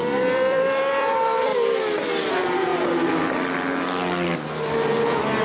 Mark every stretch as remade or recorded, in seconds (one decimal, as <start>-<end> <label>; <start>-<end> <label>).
0.0-1.5 remade; 1.5-2.3 recorded; 2.3-2.7 remade; 2.7-5.4 recorded